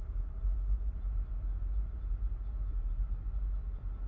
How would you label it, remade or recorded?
recorded